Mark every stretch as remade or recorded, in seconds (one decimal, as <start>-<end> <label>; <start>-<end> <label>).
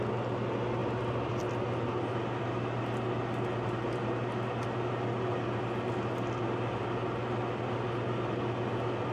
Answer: 0.0-9.1 recorded